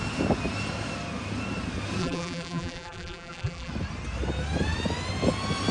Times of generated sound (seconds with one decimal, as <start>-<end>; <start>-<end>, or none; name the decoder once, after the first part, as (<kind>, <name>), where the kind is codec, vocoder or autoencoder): 2.0-3.7 (vocoder, BigVGAN v2)